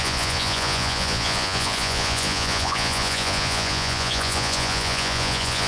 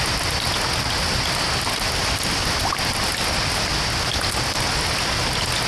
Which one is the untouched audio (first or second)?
second